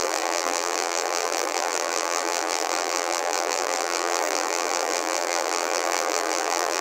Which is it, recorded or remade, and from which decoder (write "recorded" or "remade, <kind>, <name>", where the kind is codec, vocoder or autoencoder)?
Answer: remade, vocoder, BigVGAN v2